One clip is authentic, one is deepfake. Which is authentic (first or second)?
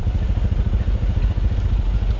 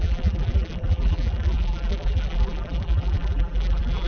first